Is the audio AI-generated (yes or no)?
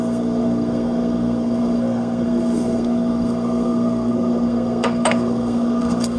yes